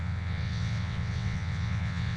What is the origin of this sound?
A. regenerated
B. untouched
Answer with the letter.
A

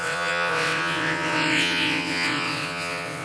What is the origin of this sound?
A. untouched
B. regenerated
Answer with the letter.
B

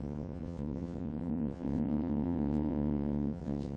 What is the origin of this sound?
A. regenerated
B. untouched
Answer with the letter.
A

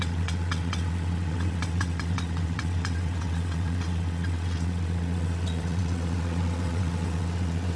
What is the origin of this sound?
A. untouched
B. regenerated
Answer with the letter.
B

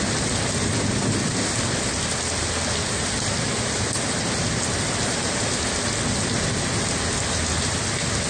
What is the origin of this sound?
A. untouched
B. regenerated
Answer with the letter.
A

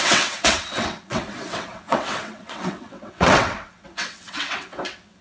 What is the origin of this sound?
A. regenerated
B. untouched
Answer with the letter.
A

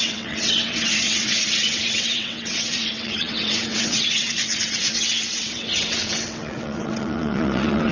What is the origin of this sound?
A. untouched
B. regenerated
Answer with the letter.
B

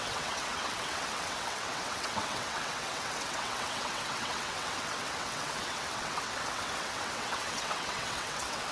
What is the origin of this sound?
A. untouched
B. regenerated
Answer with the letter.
B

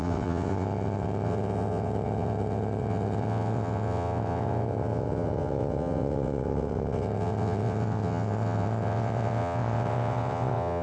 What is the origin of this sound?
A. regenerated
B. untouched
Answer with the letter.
A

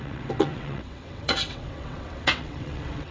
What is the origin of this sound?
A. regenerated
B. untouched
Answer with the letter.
A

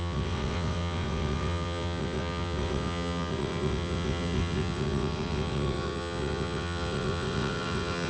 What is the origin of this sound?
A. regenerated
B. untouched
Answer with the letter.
A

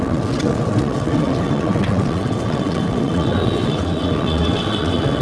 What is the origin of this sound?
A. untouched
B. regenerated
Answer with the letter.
B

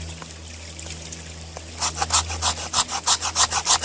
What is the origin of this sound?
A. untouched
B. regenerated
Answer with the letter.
A